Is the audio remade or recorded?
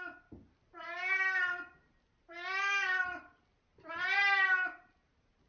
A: recorded